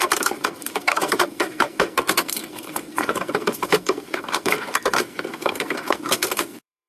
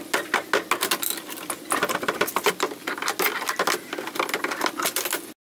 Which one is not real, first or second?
first